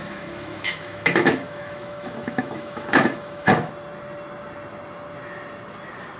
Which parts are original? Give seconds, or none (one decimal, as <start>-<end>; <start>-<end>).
3.7-6.2